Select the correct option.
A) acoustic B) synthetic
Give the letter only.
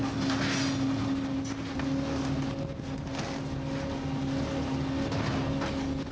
A